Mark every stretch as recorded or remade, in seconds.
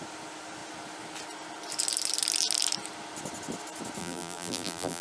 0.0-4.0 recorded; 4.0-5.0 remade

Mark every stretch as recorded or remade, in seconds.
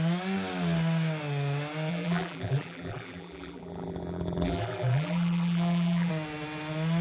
0.0-1.9 recorded; 1.9-6.1 remade; 6.1-7.0 recorded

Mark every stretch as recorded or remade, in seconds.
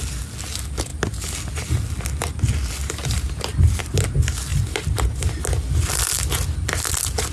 0.0-2.8 recorded; 2.8-3.8 remade; 3.8-4.5 recorded; 4.5-5.4 remade; 5.4-7.3 recorded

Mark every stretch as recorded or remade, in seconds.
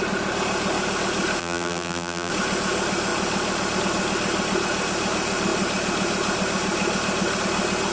0.0-1.4 recorded; 1.4-2.3 remade; 2.3-7.9 recorded